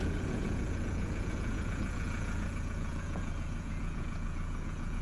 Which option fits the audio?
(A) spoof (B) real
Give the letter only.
A